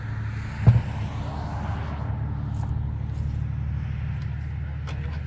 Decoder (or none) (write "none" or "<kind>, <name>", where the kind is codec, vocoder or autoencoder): none